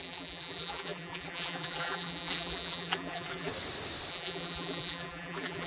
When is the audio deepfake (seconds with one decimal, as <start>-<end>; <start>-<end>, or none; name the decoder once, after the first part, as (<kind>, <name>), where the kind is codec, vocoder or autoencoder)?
0.0-3.5 (vocoder, BigVGAN v2); 4.1-5.7